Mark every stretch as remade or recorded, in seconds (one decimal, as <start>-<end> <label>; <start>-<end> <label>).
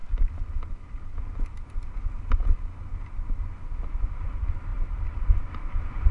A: 0.0-6.1 recorded